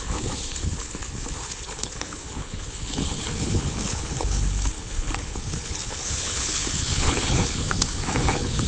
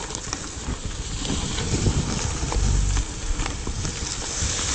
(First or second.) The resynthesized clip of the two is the first